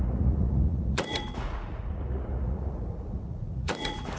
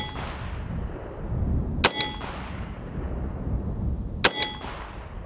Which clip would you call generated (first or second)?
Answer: first